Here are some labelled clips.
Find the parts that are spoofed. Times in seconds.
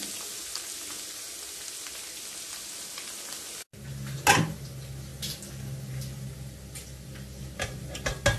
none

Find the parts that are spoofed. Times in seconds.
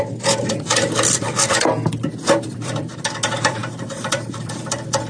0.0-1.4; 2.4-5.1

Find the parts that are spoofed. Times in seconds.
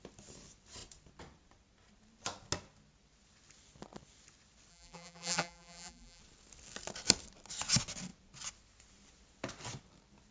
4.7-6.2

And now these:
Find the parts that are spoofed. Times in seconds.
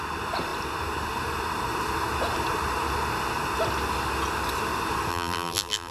5.1-5.9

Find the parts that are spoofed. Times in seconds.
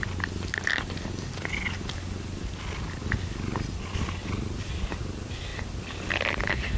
none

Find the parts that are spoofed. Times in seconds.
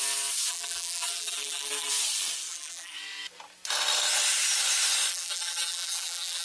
0.5-1.9; 2.5-2.9; 5.1-6.4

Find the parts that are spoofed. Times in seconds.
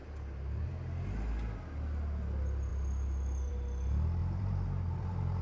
4.2-5.4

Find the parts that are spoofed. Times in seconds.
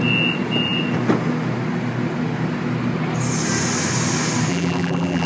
4.5-5.3